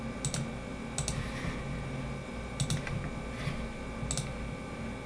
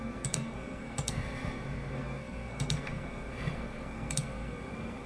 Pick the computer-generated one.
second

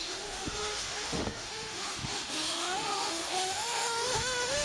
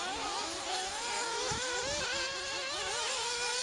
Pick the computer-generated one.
first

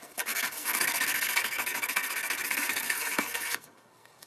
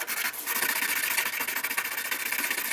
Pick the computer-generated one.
first